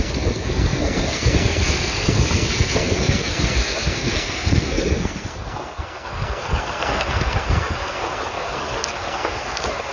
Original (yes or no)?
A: no